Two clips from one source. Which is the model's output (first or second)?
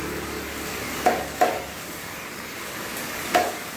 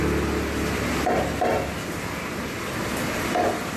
first